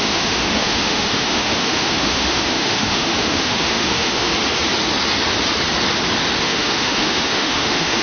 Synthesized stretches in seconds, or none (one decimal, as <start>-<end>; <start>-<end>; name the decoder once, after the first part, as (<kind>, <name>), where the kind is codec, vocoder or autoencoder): 0.0-4.3 (autoencoder, DAC-VAE); 6.4-8.0